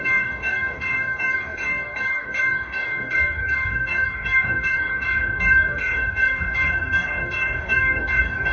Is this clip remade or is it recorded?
remade